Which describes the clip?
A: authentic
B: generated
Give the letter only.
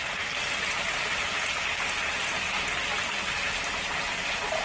A